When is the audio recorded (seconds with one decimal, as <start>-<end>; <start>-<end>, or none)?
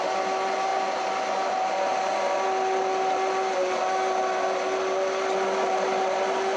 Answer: 0.0-6.6